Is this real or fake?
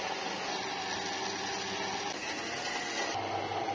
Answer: real